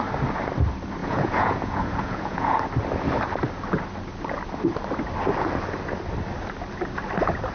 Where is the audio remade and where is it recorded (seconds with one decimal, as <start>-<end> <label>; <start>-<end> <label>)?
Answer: 0.0-1.0 recorded; 1.0-2.6 remade; 2.6-7.5 recorded